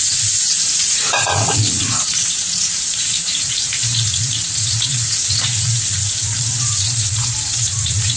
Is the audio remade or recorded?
remade